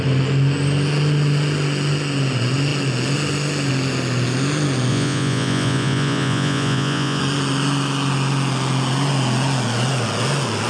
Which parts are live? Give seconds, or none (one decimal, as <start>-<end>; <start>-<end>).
0.0-4.9; 7.2-10.7